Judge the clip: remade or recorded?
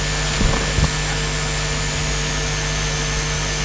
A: recorded